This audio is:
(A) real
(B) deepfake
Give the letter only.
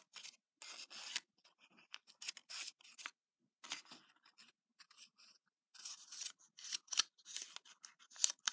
A